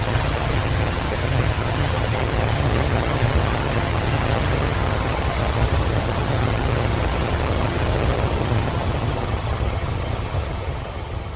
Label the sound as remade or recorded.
remade